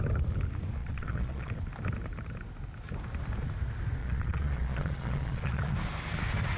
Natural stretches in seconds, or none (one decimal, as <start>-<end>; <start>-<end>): 0.0-0.8; 1.5-4.0; 5.7-6.6